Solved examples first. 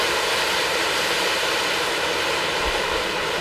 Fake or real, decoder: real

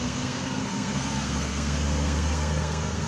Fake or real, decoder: fake, codec, SNAC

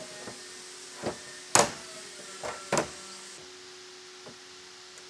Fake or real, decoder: real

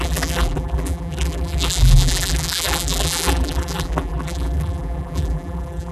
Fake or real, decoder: fake, vocoder, BigVGAN v2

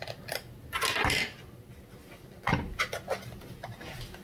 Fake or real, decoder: real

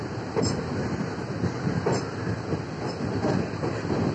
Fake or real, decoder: real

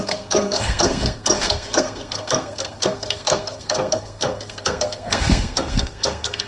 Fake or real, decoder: fake, codec, SNAC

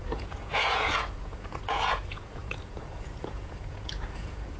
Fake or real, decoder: fake, vocoder, Vocos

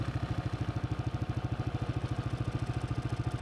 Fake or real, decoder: real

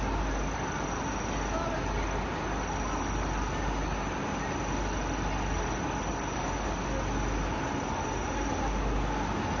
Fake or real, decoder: real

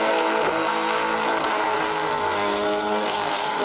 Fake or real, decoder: fake, codec, SNAC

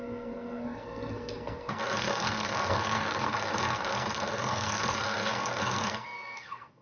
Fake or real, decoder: fake, codec, SNAC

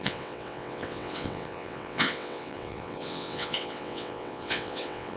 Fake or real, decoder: fake, vocoder, WaveNeXt